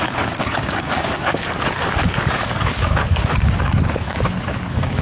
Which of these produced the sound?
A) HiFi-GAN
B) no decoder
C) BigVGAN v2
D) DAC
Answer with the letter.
D